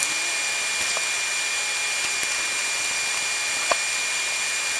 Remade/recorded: recorded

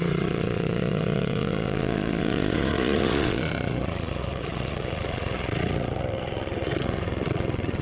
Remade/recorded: remade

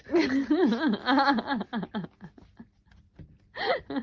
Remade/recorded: recorded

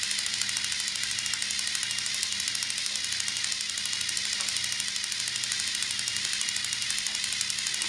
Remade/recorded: recorded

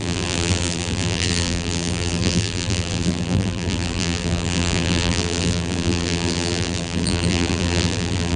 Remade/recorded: remade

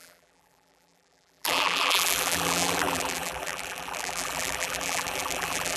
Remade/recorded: remade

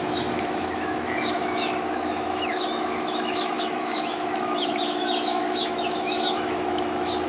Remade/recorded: remade